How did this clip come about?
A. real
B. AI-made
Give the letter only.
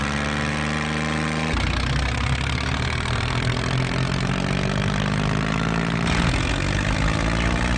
A